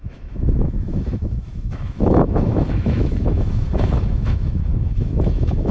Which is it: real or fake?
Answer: fake